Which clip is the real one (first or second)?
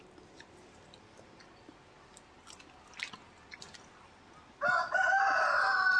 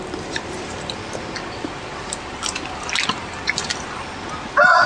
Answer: first